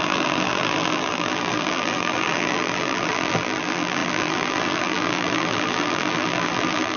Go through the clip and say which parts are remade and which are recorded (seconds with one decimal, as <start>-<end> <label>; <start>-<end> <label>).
0.0-7.0 remade